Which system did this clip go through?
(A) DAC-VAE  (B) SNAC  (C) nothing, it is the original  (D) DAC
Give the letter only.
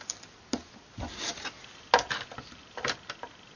C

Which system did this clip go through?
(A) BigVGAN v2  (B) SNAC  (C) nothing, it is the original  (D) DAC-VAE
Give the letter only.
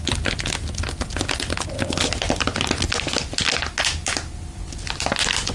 C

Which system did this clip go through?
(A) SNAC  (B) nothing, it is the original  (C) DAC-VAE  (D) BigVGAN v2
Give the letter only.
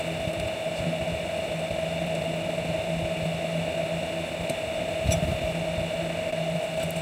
B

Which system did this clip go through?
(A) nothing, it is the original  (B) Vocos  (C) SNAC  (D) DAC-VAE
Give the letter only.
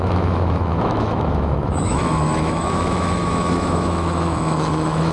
D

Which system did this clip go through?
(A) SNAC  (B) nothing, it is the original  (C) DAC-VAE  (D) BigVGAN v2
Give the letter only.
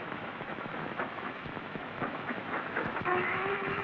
C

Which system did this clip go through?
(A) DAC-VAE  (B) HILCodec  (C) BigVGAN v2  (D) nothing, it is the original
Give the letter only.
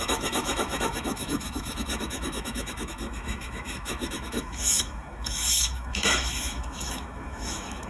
A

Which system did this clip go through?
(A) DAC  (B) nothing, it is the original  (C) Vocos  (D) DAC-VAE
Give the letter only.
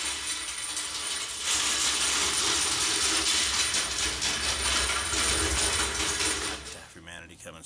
B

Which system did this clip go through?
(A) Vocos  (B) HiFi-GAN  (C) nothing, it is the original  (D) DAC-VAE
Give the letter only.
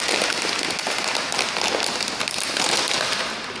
C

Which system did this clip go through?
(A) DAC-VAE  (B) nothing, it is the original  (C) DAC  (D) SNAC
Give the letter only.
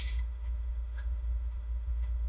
A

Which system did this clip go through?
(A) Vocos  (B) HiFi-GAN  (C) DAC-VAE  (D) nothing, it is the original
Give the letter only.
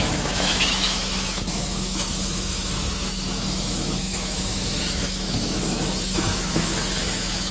C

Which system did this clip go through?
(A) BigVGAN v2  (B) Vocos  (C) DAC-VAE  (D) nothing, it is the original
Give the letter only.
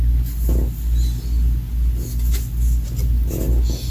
D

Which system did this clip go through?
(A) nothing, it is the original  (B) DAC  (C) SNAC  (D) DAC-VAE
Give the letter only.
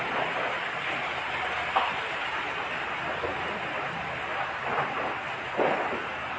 A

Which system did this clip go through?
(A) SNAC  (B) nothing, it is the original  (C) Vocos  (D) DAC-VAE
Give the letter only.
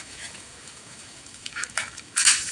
D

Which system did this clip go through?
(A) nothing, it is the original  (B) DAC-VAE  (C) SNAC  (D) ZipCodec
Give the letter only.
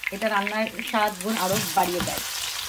A